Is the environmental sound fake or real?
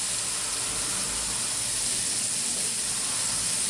real